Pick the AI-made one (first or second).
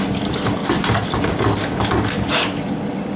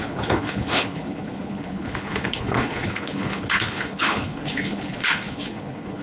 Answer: second